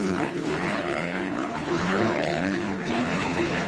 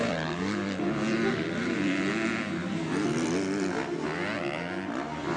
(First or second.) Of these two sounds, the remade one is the first